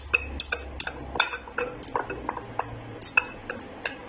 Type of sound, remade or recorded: recorded